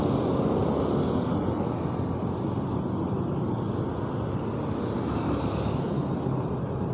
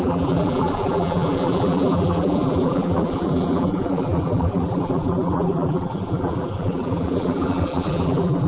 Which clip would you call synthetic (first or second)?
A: second